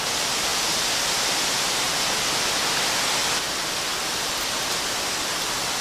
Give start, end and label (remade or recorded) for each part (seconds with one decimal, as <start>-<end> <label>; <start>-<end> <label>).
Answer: 0.0-5.8 recorded

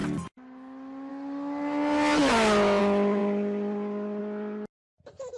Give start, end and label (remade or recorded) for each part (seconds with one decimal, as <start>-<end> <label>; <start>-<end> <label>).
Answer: 0.0-5.4 recorded